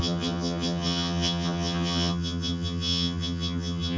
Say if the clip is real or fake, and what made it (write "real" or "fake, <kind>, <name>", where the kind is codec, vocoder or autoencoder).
fake, vocoder, HiFi-GAN